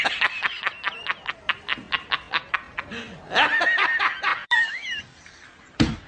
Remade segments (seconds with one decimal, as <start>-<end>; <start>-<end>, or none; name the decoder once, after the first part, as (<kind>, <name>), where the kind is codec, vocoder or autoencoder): 4.3-5.0 (vocoder, BigVGAN v2)